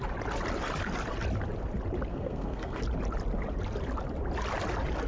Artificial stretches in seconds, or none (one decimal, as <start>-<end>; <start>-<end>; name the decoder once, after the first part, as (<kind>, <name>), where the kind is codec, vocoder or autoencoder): 2.1-2.8 (codec, SNAC)

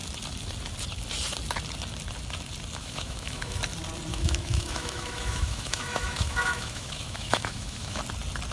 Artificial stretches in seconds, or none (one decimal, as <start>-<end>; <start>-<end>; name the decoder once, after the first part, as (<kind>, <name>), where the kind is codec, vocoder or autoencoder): 2.8-3.6 (autoencoder, DAC-VAE); 4.1-8.0